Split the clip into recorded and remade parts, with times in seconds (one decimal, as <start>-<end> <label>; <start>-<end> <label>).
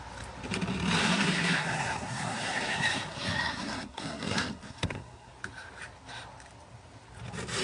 0.0-1.0 recorded; 1.0-5.3 remade; 5.3-7.6 recorded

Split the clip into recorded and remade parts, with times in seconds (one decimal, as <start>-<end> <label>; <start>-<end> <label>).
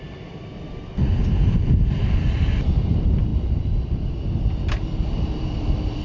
0.0-6.0 recorded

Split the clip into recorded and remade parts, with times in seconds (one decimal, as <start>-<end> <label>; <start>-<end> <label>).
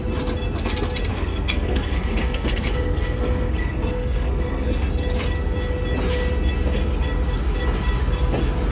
0.0-1.1 recorded; 1.1-4.7 remade; 4.7-8.7 recorded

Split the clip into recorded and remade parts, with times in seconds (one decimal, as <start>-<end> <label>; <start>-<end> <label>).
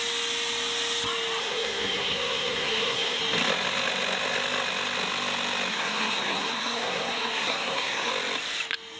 0.0-1.4 recorded; 1.4-3.2 remade; 3.2-5.7 recorded; 5.7-8.1 remade; 8.1-9.0 recorded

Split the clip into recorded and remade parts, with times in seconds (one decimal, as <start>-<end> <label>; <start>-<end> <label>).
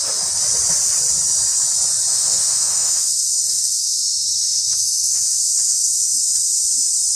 0.0-2.1 recorded; 2.1-6.4 remade; 6.4-7.2 recorded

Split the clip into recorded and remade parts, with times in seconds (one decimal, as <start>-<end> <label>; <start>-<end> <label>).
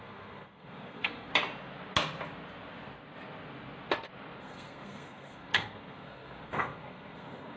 0.0-1.3 remade; 1.3-4.4 recorded; 4.4-7.6 remade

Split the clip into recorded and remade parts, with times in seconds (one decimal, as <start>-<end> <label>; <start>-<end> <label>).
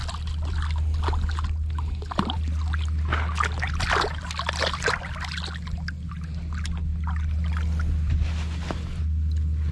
0.0-9.7 recorded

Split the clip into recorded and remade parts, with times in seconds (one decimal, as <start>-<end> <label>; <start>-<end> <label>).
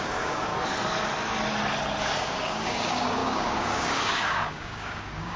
0.0-0.5 remade; 0.5-2.0 recorded; 2.0-5.4 remade